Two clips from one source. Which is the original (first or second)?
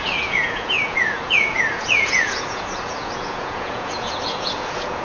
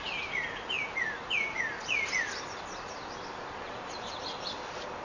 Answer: second